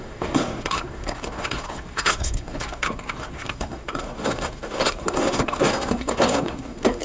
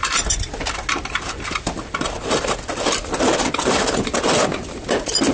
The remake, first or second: first